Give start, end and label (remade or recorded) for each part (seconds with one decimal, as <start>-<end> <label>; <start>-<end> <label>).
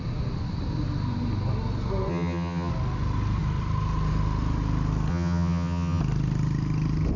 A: 0.0-2.1 recorded; 2.1-2.7 remade; 2.7-5.1 recorded; 5.1-6.0 remade; 6.0-7.2 recorded